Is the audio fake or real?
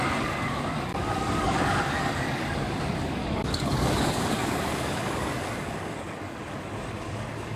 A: fake